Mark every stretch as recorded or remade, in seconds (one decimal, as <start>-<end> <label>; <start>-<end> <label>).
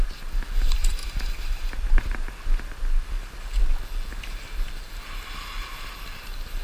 0.0-6.6 recorded